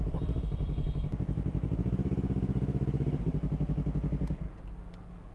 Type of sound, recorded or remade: recorded